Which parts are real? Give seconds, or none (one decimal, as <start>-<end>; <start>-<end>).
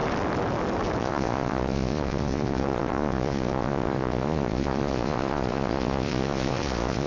0.0-1.0